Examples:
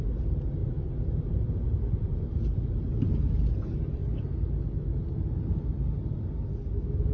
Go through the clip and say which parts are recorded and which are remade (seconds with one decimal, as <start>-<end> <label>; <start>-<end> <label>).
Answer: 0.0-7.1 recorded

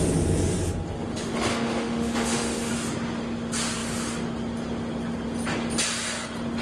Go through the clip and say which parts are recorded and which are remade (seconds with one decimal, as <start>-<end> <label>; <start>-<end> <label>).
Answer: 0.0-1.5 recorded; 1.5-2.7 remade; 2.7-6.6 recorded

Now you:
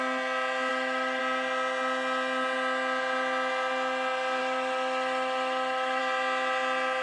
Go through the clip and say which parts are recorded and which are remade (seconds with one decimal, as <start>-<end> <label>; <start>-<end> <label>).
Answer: 0.0-0.7 recorded; 0.7-1.2 remade; 1.2-4.4 recorded; 4.4-6.0 remade; 6.0-7.0 recorded